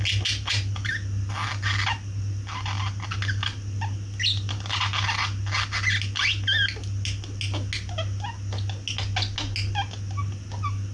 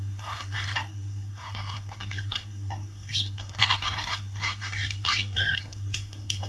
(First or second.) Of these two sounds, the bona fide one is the first